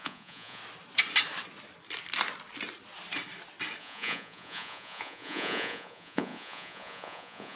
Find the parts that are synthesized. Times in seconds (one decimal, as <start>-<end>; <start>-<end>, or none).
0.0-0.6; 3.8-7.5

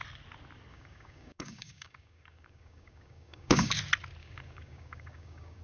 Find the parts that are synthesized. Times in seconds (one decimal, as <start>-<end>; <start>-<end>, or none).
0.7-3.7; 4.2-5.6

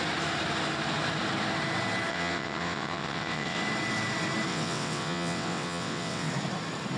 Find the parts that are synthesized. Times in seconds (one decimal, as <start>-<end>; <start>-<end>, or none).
2.1-3.6; 4.5-6.3

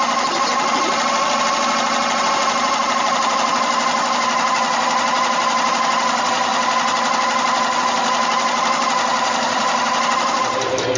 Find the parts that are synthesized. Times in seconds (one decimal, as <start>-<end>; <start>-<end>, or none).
9.1-10.4